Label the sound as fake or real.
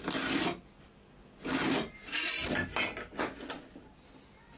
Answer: real